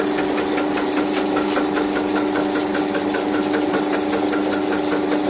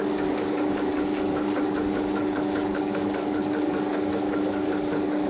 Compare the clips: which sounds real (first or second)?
first